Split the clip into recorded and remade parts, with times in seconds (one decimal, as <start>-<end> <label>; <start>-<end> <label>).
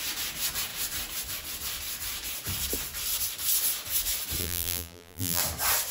0.0-4.4 recorded; 4.4-5.4 remade; 5.4-5.9 recorded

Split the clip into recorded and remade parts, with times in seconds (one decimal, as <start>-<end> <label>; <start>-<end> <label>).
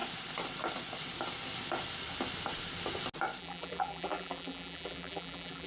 0.0-3.4 recorded; 3.4-5.7 remade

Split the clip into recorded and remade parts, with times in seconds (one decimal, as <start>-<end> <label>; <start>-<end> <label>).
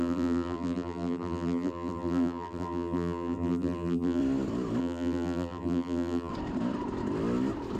0.0-4.2 remade; 4.2-4.8 recorded; 4.8-6.3 remade; 6.3-7.8 recorded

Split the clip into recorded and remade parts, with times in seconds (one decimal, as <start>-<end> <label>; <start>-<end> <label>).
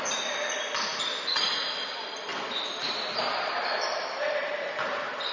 0.0-5.3 remade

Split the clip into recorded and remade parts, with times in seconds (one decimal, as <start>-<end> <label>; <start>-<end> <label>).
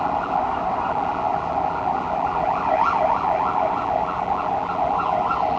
0.0-0.4 remade; 0.4-0.9 recorded; 0.9-5.6 remade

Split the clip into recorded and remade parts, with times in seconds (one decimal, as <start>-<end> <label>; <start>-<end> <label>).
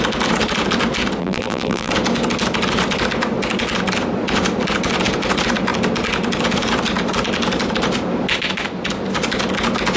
0.0-1.2 recorded; 1.2-1.9 remade; 1.9-10.0 recorded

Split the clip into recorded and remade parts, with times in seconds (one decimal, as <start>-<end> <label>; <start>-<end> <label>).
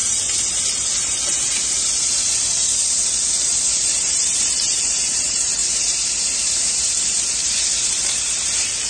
0.0-8.9 remade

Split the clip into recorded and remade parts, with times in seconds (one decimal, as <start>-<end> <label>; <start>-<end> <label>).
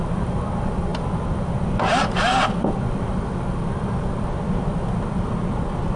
0.0-3.1 remade; 3.1-5.5 recorded; 5.5-6.0 remade